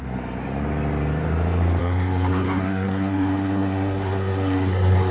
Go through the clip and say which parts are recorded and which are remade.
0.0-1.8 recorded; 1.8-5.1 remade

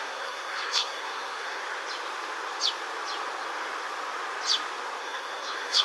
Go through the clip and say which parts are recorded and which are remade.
0.0-1.6 remade; 1.6-5.0 recorded; 5.0-5.8 remade

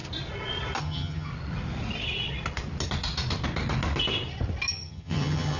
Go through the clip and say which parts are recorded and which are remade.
0.0-0.8 recorded; 0.8-1.3 remade; 1.3-4.7 recorded; 4.7-5.6 remade

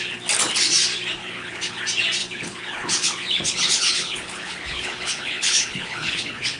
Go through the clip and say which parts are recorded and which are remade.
0.0-1.2 recorded; 1.2-1.8 remade; 1.8-2.2 recorded; 2.2-6.6 remade

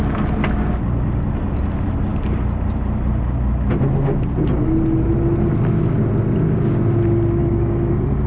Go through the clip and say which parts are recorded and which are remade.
0.0-7.4 recorded; 7.4-7.9 remade; 7.9-8.3 recorded